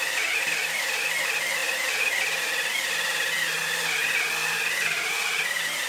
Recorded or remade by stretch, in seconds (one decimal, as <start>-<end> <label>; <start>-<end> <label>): 0.0-5.9 recorded